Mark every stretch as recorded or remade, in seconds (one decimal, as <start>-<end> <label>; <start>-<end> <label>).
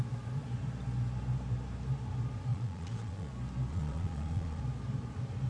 0.0-2.5 recorded; 2.5-3.3 remade; 3.3-3.7 recorded; 3.7-4.6 remade; 4.6-5.5 recorded